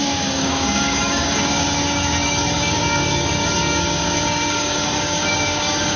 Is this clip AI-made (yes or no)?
yes